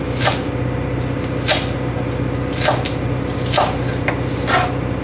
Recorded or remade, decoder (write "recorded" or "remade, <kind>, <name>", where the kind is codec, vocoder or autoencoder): recorded